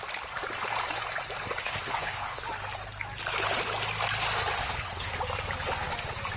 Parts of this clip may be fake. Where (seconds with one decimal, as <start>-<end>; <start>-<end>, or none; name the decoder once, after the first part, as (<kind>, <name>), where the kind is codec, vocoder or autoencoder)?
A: 1.6-2.4 (codec, HILCodec); 4.6-5.1